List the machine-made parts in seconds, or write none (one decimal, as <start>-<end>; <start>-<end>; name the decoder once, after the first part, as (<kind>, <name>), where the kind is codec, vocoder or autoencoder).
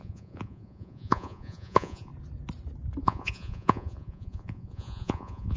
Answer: 0.0-2.1 (vocoder, Vocos); 3.0-5.6